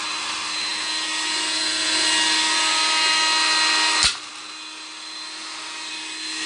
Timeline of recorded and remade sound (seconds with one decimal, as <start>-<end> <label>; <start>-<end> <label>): 0.0-6.5 recorded